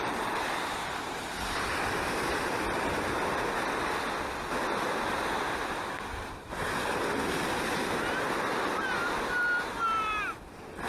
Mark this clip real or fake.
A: real